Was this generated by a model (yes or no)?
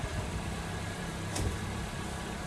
yes